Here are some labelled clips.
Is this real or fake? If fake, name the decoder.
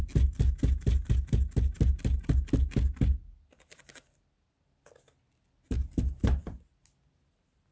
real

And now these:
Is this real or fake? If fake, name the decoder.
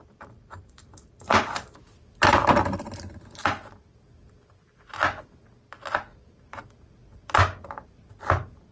real